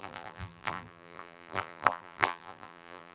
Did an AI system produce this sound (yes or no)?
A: yes